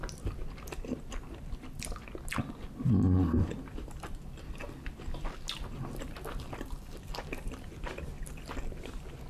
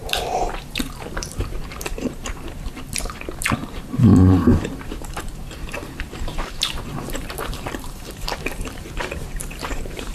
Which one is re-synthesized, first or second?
second